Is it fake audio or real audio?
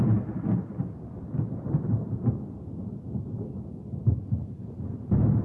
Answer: fake